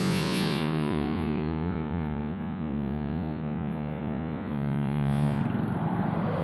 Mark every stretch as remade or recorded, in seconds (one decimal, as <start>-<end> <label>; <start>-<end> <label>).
0.0-5.4 remade; 5.4-6.4 recorded